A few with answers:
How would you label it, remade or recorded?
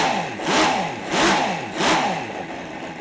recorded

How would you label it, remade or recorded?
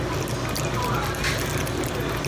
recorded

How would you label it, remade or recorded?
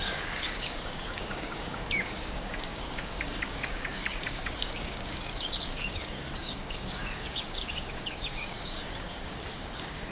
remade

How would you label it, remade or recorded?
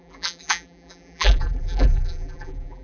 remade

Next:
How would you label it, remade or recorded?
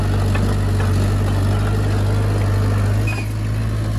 recorded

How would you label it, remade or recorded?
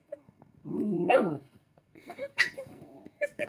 remade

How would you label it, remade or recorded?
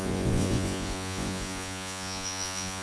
remade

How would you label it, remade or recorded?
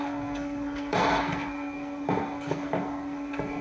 remade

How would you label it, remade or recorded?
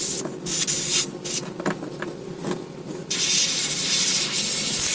recorded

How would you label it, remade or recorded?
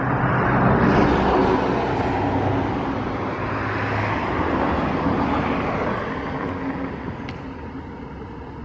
recorded